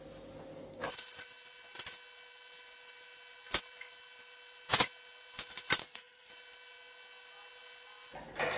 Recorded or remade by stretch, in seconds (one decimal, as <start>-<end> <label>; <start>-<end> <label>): 0.0-5.8 recorded; 5.8-6.3 remade; 6.3-8.6 recorded